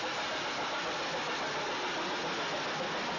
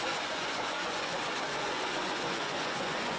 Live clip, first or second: first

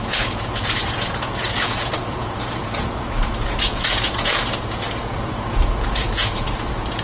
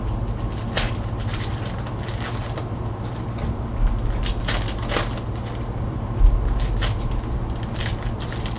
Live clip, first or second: second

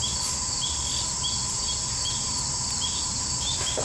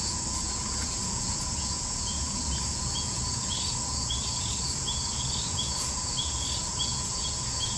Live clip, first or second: first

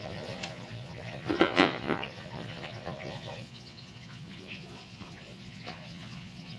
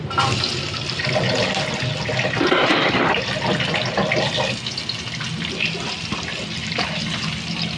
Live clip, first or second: second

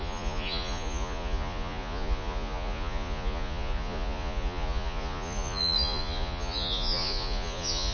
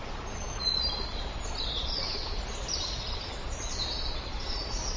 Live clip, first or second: second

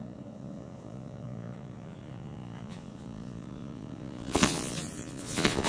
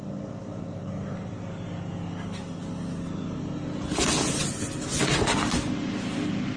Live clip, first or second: second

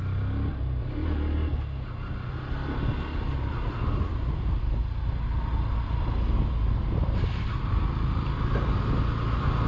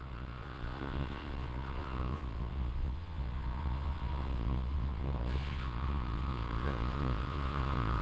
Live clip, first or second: first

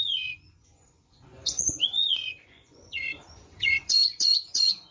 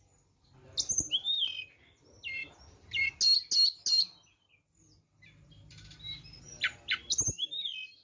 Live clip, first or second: second